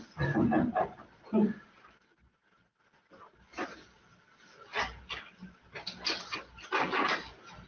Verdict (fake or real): real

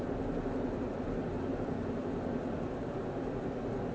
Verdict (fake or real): real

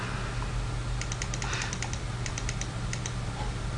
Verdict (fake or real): real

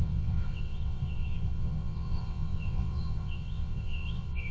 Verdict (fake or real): fake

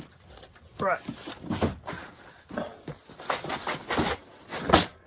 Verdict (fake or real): real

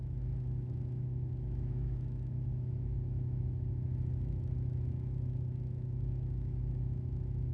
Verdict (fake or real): fake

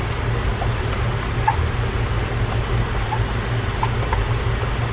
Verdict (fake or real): real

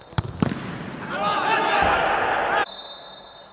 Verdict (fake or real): real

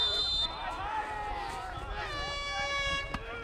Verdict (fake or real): real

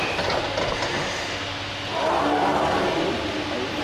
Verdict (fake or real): real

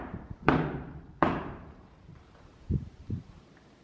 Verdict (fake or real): fake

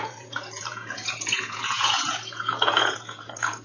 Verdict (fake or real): fake